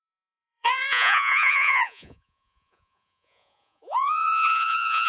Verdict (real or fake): fake